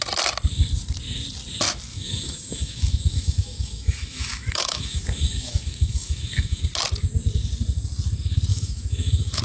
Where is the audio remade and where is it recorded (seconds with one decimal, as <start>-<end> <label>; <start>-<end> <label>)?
0.0-1.9 recorded; 1.9-6.6 remade; 6.6-8.5 recorded; 8.5-9.4 remade